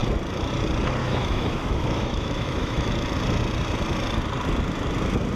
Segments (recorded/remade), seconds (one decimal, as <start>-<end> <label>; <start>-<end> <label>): 0.0-1.0 recorded; 1.0-2.9 remade; 2.9-5.4 recorded